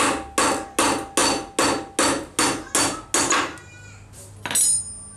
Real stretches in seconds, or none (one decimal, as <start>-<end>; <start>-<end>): 0.0-5.2

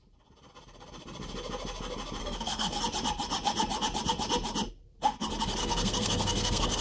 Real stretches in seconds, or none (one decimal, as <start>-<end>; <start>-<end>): 0.0-2.2; 2.8-5.6

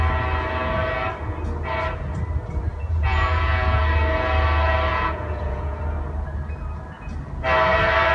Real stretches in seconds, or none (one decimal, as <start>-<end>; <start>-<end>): 0.0-2.7; 3.8-4.9; 5.8-8.1

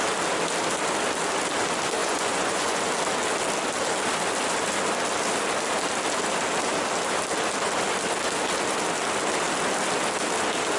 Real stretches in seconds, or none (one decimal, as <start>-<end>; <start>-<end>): 0.0-2.0; 2.9-10.8

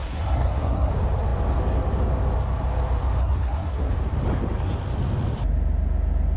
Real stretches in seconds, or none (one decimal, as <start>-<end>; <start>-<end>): 0.9-3.2; 3.9-6.4

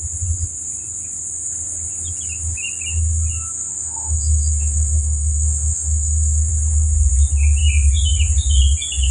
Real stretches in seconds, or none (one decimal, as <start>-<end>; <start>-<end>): 0.0-3.8; 6.5-9.1

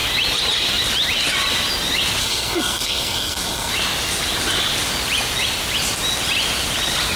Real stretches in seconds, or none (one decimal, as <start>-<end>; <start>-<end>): 0.0-2.2; 3.7-7.2